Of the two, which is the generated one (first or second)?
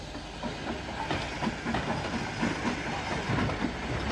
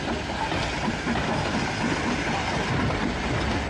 second